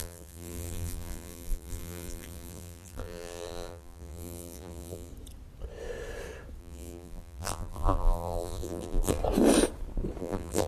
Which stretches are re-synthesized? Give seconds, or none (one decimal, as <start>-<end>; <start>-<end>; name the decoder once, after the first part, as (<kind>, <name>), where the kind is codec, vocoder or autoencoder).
0.0-5.1 (vocoder, BigVGAN v2); 6.6-9.2; 10.2-10.7